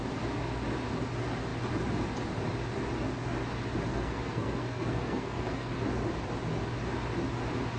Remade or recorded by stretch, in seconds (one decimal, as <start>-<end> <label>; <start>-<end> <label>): 0.0-3.9 recorded; 3.9-5.7 remade; 5.7-7.8 recorded

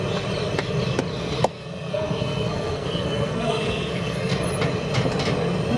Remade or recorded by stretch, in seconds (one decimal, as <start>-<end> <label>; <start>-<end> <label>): 0.0-1.1 recorded; 1.1-4.4 remade; 4.4-5.8 recorded

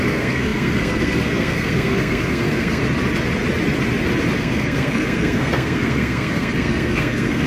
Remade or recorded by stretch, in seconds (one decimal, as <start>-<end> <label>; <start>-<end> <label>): 0.0-2.8 remade; 2.8-4.4 recorded; 4.4-7.5 remade